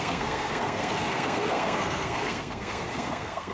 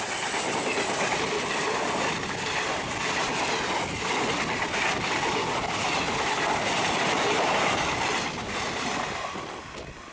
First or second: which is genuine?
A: second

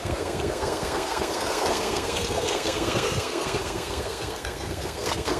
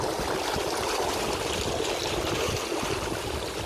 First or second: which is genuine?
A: second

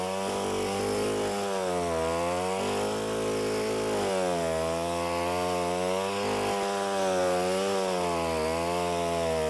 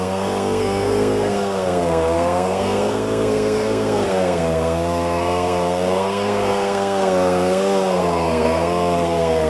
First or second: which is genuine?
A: first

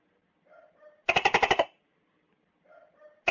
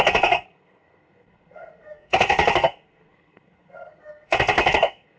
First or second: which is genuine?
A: first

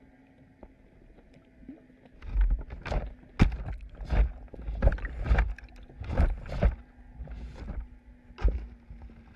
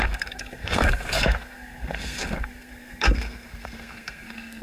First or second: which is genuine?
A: first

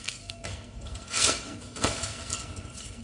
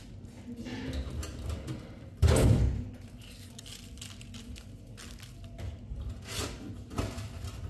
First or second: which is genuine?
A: second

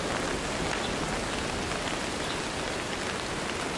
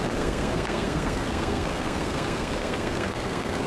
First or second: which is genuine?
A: first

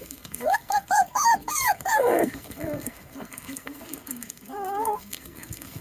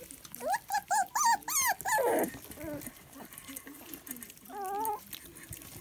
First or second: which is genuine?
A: second